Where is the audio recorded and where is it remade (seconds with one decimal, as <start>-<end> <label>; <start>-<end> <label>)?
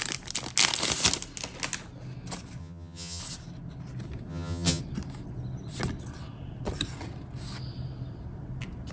0.0-2.6 recorded; 2.6-3.2 remade; 3.2-4.3 recorded; 4.3-4.8 remade; 4.8-8.9 recorded